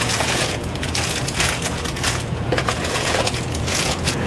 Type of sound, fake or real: fake